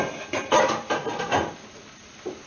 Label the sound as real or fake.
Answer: real